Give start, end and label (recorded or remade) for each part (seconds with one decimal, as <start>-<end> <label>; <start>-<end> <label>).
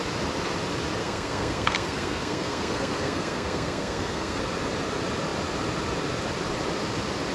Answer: 0.0-1.0 recorded; 1.0-4.4 remade; 4.4-7.3 recorded